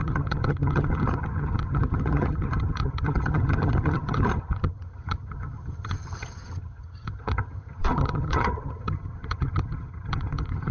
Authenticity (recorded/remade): remade